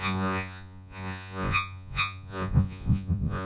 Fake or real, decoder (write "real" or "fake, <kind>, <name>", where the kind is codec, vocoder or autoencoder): fake, vocoder, Vocos